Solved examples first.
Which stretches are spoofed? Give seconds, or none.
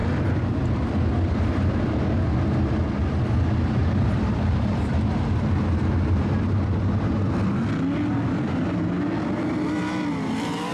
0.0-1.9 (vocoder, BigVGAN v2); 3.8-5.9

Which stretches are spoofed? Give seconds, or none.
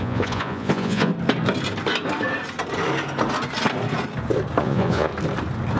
0.0-1.1 (vocoder, Vocos); 4.6-5.1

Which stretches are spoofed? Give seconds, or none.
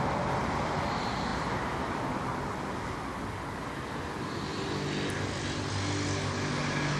none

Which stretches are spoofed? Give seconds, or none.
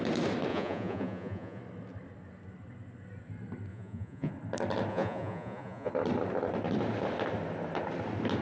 0.5-1.6 (vocoder, Vocos); 3.7-4.3; 4.9-5.9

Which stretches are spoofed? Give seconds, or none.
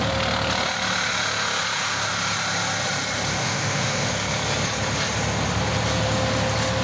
3.4-4.1 (autoencoder, DAC-VAE)